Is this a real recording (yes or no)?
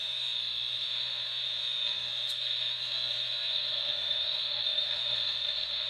no